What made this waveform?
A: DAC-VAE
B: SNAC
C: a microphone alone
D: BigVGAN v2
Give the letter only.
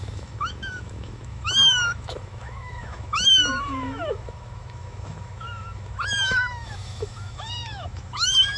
A